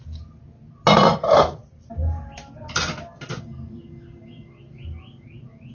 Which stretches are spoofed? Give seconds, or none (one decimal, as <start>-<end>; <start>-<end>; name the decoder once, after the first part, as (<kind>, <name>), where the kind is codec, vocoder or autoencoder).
none